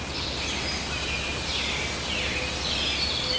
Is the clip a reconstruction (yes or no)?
no